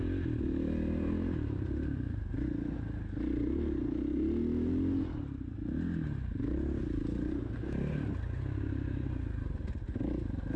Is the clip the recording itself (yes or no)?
yes